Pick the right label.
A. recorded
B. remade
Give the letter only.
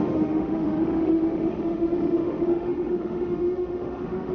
B